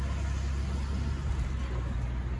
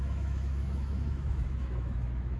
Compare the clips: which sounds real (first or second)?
first